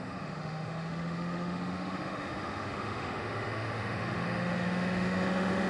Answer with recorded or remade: remade